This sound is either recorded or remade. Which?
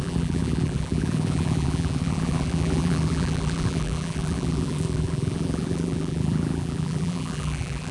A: remade